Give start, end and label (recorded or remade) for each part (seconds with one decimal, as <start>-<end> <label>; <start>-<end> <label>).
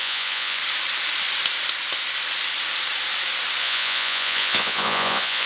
0.0-0.6 remade; 0.6-3.6 recorded; 3.6-5.5 remade